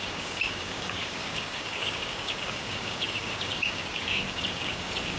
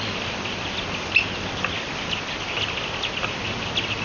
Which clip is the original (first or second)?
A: second